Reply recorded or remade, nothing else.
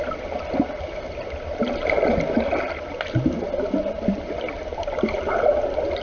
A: recorded